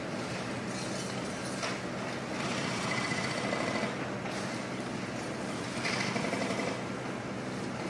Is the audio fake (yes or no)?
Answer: no